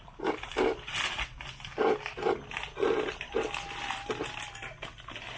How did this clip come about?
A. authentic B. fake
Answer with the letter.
A